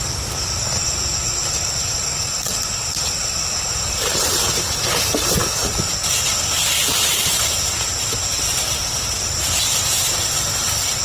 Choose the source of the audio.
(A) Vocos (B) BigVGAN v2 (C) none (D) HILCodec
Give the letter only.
C